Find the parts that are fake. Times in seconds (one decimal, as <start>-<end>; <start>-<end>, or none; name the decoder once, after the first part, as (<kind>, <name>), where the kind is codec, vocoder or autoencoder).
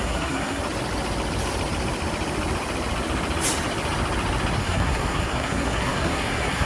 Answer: 0.0-0.6 (codec, SNAC); 4.6-6.7